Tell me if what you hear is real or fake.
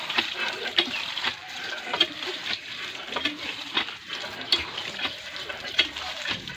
fake